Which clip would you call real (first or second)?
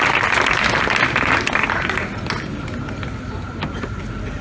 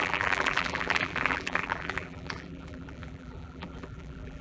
first